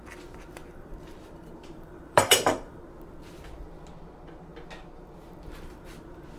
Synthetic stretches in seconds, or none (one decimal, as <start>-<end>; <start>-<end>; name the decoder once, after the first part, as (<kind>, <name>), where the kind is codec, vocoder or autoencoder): 0.6-2.8 (vocoder, BigVGAN v2)